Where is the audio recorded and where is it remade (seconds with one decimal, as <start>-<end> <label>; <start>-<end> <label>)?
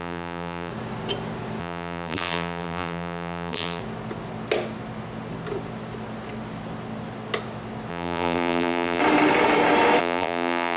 0.0-0.7 remade; 0.7-1.6 recorded; 1.6-3.8 remade; 3.8-7.9 recorded; 7.9-9.0 remade; 9.0-10.0 recorded; 10.0-10.8 remade